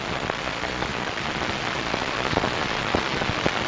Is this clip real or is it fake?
fake